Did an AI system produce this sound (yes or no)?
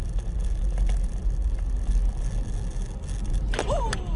no